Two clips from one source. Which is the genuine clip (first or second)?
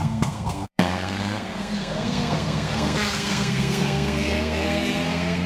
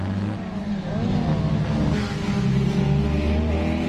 second